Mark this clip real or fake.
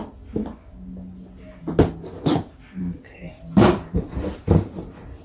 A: real